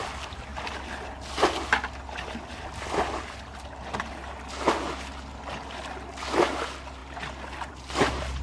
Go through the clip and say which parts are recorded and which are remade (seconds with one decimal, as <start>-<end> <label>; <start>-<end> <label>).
0.0-8.4 recorded